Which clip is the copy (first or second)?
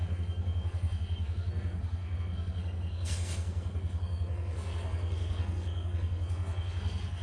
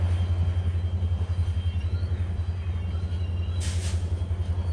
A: first